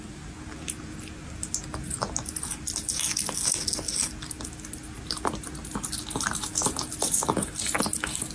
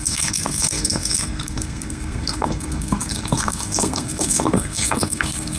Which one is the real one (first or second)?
first